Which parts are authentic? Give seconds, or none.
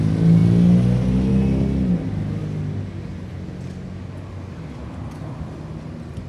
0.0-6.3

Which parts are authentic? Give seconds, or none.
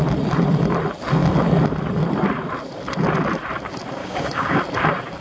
0.0-4.0; 4.6-5.2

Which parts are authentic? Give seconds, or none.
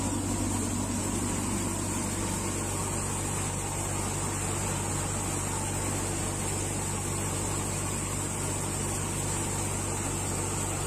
0.0-10.9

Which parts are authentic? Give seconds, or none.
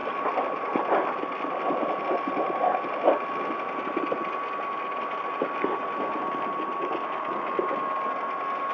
0.0-8.7